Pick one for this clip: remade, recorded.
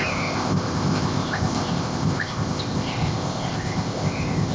remade